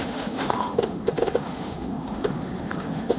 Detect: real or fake fake